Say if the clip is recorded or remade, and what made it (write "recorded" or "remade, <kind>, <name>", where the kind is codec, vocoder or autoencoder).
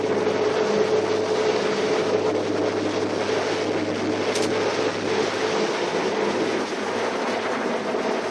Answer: recorded